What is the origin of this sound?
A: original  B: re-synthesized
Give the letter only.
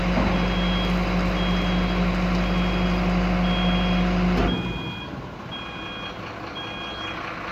A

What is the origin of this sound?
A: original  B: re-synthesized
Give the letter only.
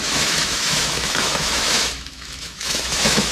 B